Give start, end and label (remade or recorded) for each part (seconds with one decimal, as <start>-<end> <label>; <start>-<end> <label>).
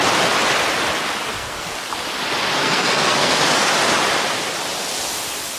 0.0-1.3 recorded; 1.3-1.8 remade; 1.8-2.6 recorded; 2.6-3.4 remade; 3.4-5.6 recorded